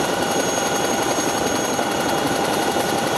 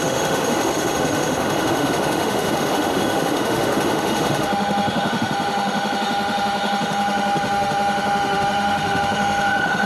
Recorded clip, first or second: first